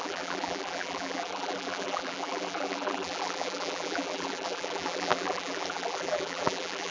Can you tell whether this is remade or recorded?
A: remade